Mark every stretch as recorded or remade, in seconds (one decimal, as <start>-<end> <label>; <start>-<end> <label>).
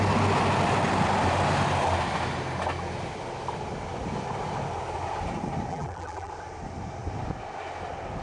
0.0-5.7 recorded; 5.7-6.3 remade; 6.3-8.2 recorded